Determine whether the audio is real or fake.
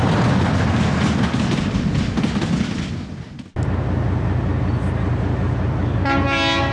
real